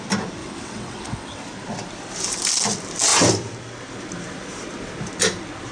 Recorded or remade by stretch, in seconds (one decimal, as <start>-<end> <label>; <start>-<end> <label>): 0.0-0.4 recorded; 0.4-1.4 remade; 1.4-5.7 recorded